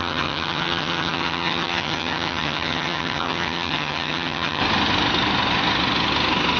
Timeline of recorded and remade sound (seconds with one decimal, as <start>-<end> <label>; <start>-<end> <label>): 0.0-4.6 remade; 4.6-6.6 recorded

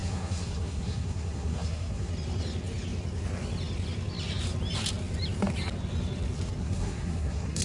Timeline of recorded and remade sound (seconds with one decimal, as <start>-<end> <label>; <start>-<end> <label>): 0.0-2.1 remade; 2.1-6.6 recorded; 6.6-7.6 remade

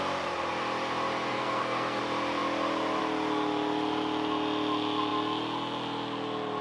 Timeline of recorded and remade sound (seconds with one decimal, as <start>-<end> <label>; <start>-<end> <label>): 0.0-1.3 recorded; 1.3-2.0 remade; 2.0-6.6 recorded

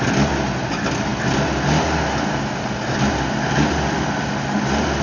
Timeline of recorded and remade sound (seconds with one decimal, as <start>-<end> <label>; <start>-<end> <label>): 0.0-5.0 recorded

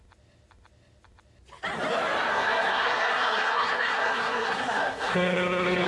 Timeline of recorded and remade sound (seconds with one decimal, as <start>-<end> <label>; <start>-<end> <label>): 0.0-2.3 recorded; 2.3-5.9 remade